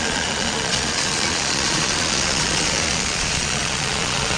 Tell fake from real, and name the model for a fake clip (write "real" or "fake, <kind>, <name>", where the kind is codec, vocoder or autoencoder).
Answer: fake, vocoder, Vocos